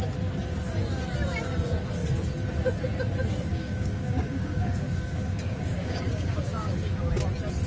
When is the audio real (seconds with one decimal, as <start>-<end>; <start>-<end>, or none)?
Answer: 0.0-3.5; 7.1-7.7